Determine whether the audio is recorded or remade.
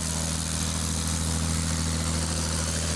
recorded